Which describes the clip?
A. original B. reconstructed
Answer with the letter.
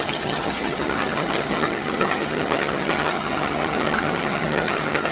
B